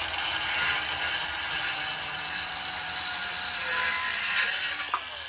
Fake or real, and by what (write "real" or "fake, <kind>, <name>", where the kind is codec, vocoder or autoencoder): real